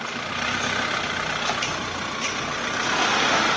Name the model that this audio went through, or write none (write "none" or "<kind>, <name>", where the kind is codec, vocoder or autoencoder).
none